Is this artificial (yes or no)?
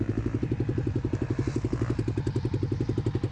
no